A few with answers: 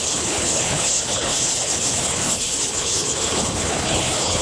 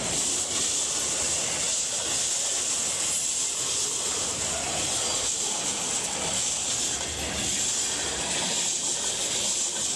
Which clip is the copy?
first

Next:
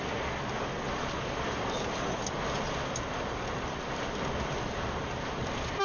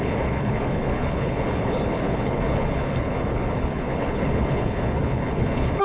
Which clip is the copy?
second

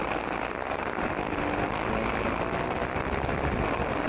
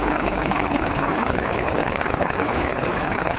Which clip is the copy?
second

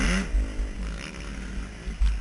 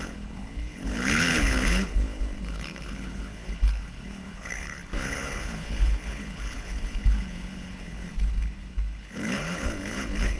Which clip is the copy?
second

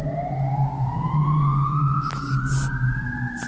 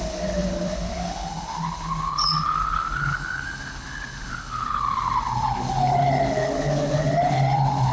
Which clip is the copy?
second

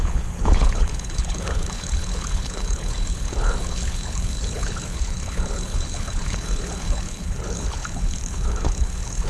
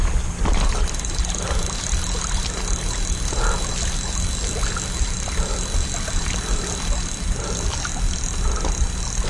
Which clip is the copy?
first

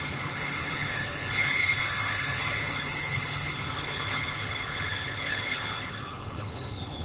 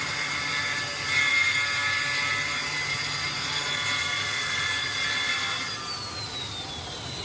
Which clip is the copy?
first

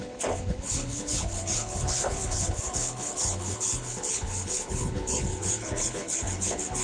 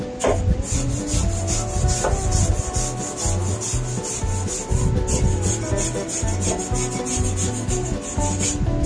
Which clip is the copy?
first